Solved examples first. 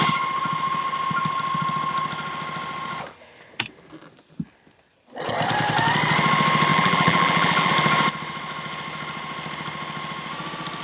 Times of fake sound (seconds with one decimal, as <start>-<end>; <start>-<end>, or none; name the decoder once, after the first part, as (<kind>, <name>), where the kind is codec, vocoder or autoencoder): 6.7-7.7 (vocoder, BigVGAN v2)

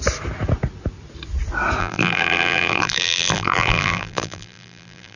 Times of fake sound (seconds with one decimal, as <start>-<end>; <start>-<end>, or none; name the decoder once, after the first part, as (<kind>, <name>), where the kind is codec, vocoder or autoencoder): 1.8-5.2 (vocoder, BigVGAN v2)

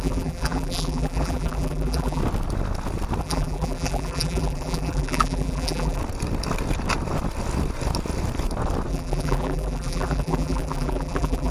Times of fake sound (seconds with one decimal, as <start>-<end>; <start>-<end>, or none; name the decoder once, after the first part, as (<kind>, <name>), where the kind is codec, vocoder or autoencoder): 0.0-2.2 (vocoder, BigVGAN v2); 3.2-6.0; 8.9-11.5

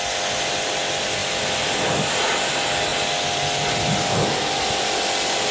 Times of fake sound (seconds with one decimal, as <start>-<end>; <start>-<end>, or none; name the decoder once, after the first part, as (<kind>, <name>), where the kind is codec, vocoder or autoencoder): none

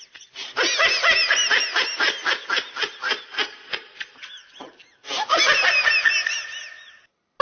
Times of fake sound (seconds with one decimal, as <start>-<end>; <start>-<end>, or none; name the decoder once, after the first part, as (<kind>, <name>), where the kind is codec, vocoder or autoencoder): none

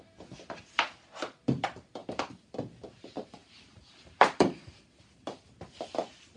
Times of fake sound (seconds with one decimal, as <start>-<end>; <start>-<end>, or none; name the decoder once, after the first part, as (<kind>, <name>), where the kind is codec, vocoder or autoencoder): 2.0-2.8 (vocoder, BigVGAN v2); 3.4-5.5

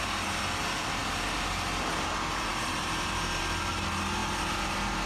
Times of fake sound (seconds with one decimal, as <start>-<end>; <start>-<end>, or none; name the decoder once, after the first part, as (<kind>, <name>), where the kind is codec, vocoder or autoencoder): 1.0-1.9 (vocoder, BigVGAN v2); 2.5-3.4; 4.2-5.1